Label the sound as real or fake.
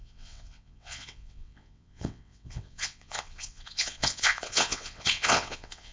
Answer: fake